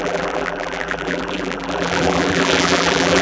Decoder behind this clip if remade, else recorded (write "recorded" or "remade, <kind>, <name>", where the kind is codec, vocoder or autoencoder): remade, vocoder, BigVGAN v2